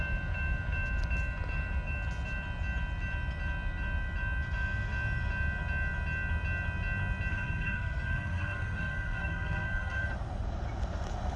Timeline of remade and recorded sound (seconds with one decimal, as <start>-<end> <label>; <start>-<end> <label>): 0.0-7.3 recorded; 7.3-10.1 remade; 10.1-11.4 recorded

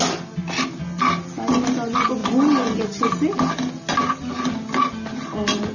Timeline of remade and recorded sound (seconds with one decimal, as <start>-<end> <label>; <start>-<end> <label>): 0.0-5.7 recorded

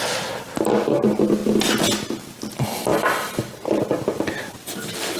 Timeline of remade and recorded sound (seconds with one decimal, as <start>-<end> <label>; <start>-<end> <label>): 0.0-1.4 remade; 1.4-2.4 recorded; 2.4-2.9 remade; 2.9-3.5 recorded; 3.5-5.2 remade

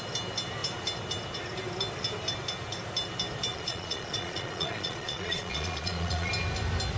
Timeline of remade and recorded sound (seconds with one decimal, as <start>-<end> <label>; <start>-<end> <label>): 0.0-3.5 recorded; 3.5-6.3 remade; 6.3-7.0 recorded